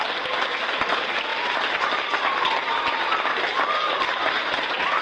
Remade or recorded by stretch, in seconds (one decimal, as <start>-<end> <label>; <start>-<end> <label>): 0.0-5.0 recorded